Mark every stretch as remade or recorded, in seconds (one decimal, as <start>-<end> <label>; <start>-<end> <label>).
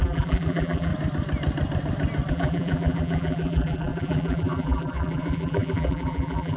0.0-0.9 remade; 0.9-2.3 recorded; 2.3-6.6 remade